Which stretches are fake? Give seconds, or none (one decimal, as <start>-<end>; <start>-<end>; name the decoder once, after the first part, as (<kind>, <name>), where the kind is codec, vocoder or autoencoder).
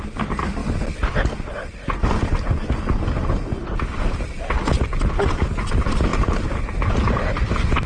none